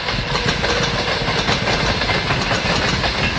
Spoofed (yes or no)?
no